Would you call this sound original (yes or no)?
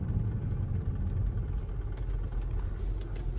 yes